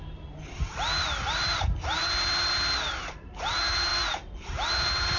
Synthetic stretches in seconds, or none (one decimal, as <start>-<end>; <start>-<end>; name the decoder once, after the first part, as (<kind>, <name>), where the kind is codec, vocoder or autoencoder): none